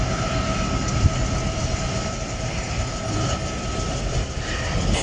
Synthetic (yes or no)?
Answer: no